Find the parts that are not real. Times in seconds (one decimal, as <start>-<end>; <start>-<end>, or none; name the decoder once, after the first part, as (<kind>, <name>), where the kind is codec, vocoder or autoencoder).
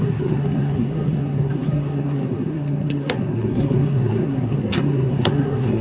0.0-5.8 (codec, SNAC)